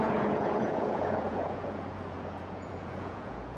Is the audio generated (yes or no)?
yes